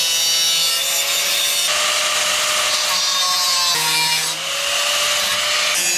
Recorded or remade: recorded